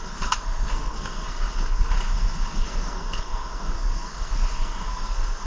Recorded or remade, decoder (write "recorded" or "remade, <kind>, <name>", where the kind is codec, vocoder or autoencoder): remade, codec, SNAC